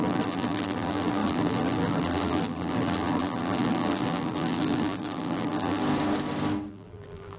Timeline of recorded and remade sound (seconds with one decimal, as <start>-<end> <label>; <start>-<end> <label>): 0.0-5.8 remade; 5.8-6.7 recorded; 6.7-7.4 remade